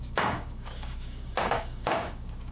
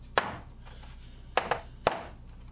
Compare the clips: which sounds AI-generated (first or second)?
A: first